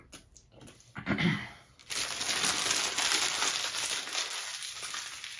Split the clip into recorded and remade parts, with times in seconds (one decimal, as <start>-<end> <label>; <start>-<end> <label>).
0.0-5.4 recorded